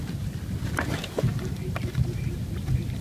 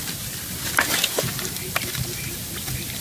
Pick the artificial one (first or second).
first